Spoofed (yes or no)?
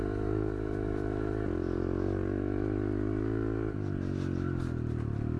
no